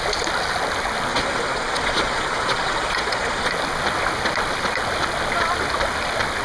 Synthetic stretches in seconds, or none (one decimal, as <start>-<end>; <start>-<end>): 1.1-3.5